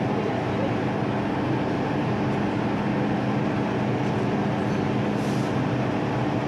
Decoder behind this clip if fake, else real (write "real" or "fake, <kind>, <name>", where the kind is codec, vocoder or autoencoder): real